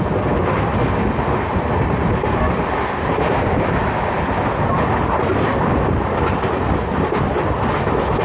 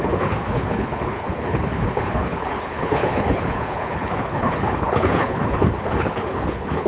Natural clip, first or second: first